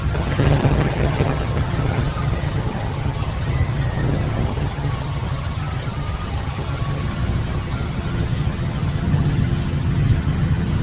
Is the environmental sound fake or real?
fake